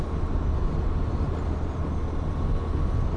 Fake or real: real